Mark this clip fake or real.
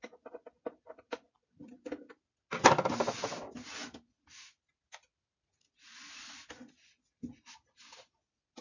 real